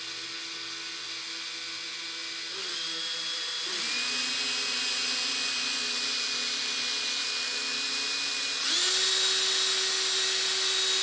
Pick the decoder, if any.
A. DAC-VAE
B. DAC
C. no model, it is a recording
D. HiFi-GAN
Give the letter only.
C